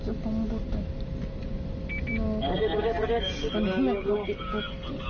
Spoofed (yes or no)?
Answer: no